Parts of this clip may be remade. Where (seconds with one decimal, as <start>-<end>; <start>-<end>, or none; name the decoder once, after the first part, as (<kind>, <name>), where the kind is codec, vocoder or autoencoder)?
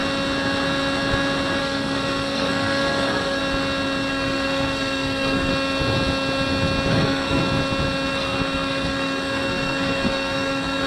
1.6-3.4 (codec, SNAC); 4.1-5.5; 6.9-7.4; 8.1-10.9